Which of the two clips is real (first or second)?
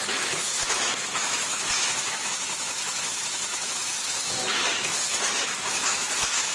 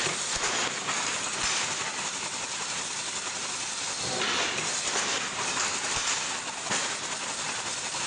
second